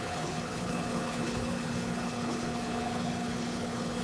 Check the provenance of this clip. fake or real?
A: fake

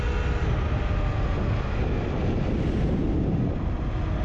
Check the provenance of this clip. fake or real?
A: real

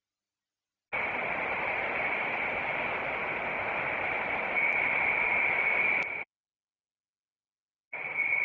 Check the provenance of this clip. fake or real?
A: real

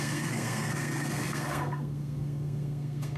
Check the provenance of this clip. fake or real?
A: fake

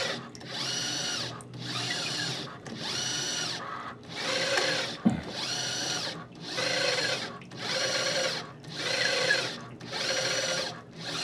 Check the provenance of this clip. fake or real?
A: real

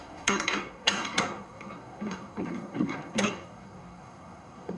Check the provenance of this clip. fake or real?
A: fake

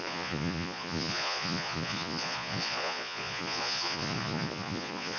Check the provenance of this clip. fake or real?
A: fake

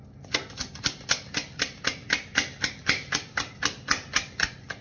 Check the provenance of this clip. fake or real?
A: real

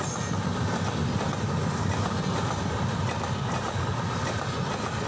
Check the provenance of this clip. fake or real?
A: real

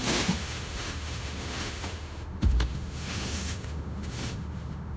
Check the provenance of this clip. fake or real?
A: fake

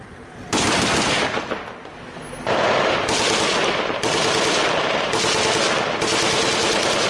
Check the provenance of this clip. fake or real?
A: real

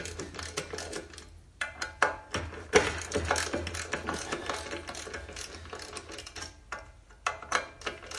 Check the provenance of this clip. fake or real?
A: real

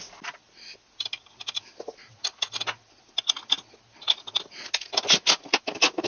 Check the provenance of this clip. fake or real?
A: real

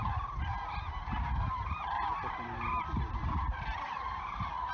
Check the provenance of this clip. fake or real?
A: fake